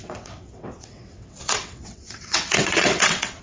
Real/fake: fake